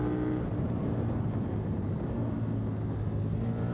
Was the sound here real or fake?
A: real